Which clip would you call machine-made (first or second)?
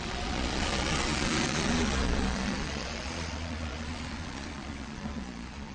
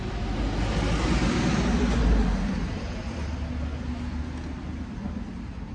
first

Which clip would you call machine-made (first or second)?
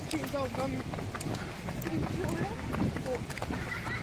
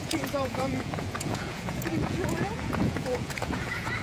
second